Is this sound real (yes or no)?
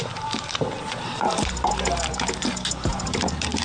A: no